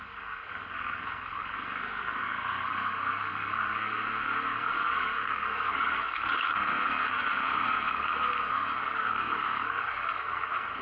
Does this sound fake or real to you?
fake